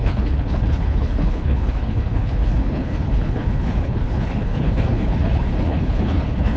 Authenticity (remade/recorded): remade